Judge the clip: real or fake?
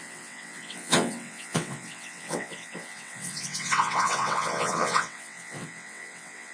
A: fake